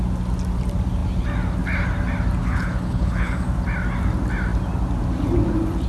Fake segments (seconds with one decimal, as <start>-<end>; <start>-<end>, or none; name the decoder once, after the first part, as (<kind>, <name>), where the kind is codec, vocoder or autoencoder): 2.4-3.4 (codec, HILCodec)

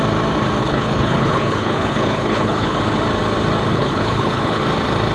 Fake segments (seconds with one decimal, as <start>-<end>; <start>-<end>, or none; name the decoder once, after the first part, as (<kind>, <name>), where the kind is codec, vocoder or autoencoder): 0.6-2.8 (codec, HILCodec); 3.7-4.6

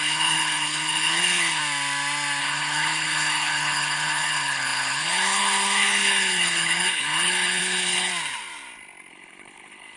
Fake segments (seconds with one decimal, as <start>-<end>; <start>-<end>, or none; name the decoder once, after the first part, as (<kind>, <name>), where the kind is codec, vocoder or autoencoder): 0.0-1.6 (codec, HILCodec); 2.4-8.1; 9.1-10.0

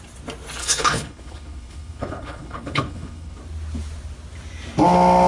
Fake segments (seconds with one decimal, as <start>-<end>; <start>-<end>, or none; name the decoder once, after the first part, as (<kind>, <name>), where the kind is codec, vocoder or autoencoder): 0.6-3.4 (codec, HILCodec)

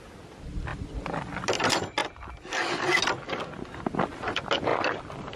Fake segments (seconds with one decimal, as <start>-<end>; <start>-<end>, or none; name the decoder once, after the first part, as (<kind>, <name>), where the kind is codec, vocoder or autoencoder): none